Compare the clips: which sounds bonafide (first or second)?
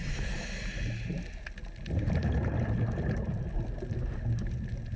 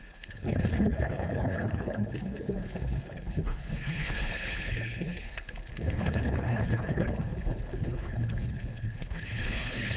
first